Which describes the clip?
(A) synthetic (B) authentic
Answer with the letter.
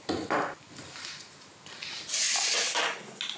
B